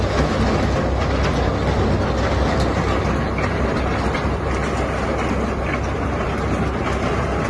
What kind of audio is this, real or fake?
real